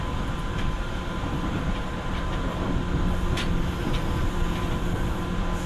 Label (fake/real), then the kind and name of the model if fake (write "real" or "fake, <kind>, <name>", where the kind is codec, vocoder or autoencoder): fake, vocoder, BigVGAN v2